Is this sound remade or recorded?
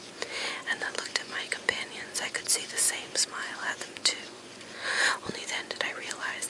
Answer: remade